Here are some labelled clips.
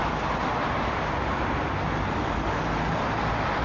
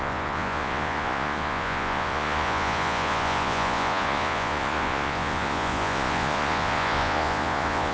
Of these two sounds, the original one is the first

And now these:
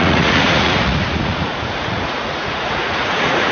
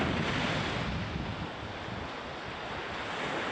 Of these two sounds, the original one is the second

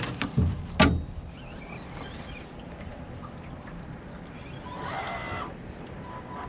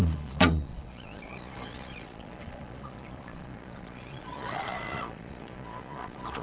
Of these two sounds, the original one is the first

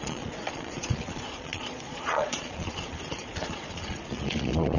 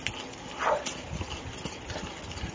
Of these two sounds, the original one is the second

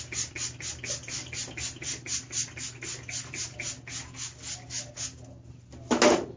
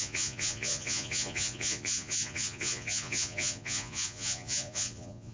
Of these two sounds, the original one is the first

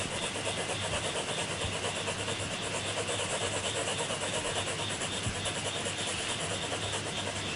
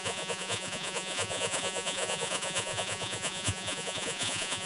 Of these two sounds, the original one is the first